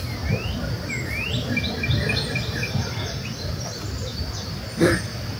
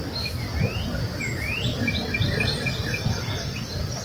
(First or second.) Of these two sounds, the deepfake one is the second